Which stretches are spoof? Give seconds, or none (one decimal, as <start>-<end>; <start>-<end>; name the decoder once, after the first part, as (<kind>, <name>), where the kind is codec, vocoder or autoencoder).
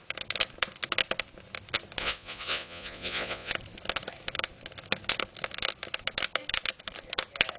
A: 2.0-3.5 (vocoder, Vocos)